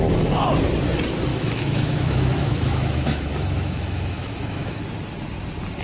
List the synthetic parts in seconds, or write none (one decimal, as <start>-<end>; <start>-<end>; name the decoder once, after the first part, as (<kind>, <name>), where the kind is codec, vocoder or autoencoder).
1.3-4.8 (autoencoder, DAC-VAE)